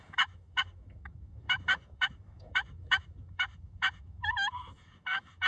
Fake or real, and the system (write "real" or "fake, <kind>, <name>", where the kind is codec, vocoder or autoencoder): fake, autoencoder, DAC-VAE